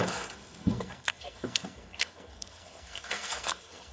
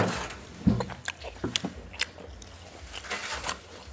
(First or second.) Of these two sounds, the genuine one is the second